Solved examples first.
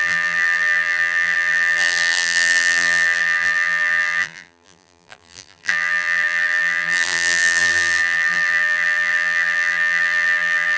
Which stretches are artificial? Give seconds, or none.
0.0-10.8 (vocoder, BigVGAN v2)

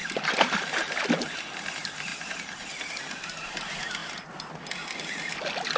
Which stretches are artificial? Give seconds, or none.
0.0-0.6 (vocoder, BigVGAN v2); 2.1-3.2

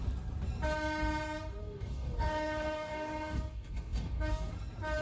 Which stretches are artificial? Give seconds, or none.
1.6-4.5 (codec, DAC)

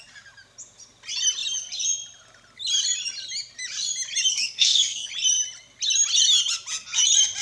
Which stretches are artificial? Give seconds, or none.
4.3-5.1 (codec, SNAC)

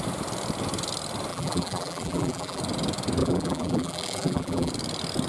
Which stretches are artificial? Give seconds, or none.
1.3-2.6 (vocoder, BigVGAN v2); 3.2-4.7